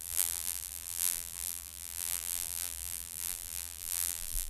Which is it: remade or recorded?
remade